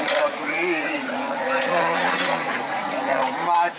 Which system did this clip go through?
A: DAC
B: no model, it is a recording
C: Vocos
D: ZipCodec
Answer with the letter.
C